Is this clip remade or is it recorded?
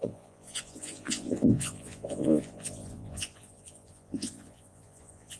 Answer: remade